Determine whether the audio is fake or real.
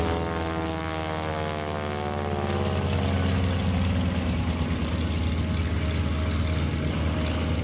real